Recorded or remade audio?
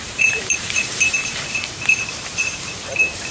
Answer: remade